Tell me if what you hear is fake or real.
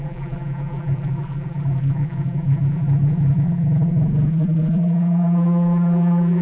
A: fake